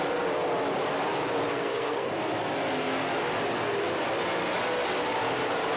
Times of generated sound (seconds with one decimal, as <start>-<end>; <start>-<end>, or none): 1.5-2.1